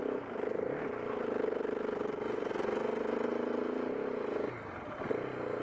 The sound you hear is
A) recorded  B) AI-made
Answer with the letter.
A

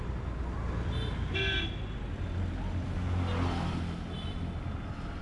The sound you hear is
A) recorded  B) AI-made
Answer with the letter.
A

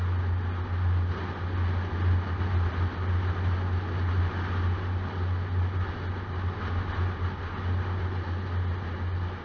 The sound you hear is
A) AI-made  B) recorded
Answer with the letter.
B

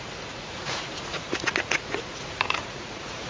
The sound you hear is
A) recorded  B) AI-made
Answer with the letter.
B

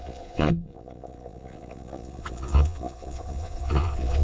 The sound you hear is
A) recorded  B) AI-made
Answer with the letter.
B